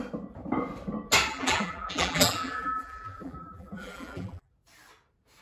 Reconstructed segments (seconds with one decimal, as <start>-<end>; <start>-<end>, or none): 1.3-4.5